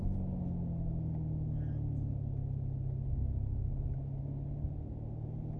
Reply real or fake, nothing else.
real